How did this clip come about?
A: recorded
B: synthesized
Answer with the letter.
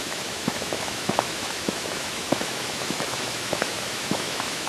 B